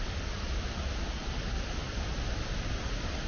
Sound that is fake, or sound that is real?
real